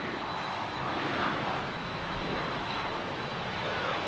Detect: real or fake fake